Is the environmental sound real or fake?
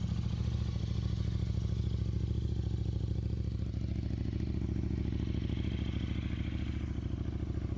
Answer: real